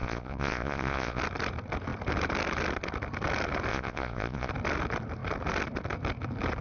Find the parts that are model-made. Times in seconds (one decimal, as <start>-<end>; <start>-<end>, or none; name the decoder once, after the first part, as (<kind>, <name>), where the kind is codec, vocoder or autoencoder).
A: 0.0-1.2 (vocoder, Vocos); 3.7-4.5